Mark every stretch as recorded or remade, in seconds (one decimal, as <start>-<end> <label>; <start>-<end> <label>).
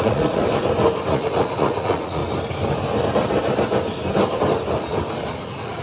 0.0-0.4 remade; 0.4-1.1 recorded; 1.1-2.2 remade; 2.2-5.3 recorded; 5.3-5.8 remade